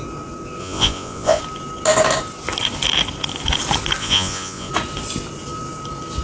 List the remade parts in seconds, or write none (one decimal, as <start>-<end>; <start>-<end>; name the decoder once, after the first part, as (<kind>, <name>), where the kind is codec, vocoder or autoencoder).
0.6-1.4 (vocoder, Vocos); 4.0-4.7